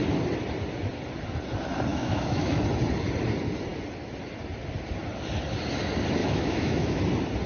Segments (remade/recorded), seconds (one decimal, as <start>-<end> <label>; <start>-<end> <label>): 0.0-1.9 recorded; 1.9-2.6 remade; 2.6-6.2 recorded; 6.2-7.0 remade; 7.0-7.5 recorded